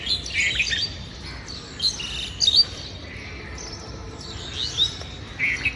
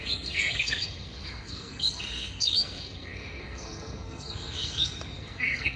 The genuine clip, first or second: first